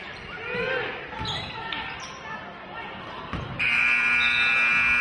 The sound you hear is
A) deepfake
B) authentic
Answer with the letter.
B